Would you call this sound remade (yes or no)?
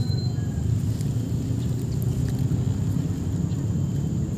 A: no